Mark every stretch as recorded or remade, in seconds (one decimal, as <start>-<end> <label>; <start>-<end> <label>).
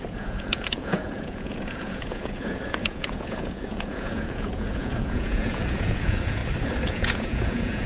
0.0-6.4 remade; 6.4-6.9 recorded; 6.9-7.9 remade